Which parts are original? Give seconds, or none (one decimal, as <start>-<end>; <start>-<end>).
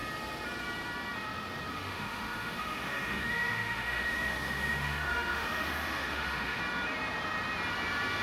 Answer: 0.0-1.7; 6.6-8.2